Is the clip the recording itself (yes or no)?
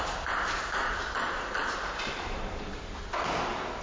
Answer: yes